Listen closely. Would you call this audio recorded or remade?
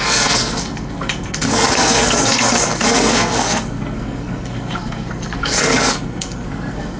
remade